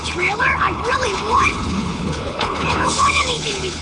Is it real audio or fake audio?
fake